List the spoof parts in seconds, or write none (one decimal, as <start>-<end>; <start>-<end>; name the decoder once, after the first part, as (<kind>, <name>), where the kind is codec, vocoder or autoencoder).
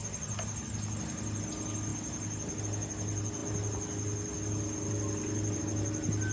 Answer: none